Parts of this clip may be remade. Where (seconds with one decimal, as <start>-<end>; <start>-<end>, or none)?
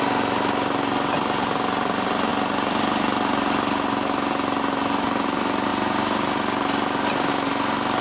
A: none